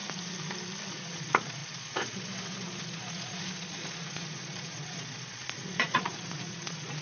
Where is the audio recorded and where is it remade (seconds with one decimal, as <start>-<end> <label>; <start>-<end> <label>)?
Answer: 0.0-0.9 recorded; 0.9-7.0 remade